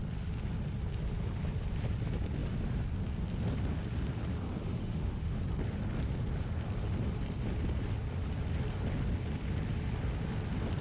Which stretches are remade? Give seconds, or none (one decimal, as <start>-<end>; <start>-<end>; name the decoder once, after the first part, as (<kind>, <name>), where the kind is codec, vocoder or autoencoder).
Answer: 4.8-5.4 (autoencoder, DAC-VAE)